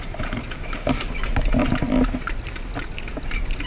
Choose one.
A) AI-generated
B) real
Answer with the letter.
B